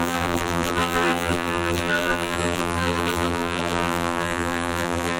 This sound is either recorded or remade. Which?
remade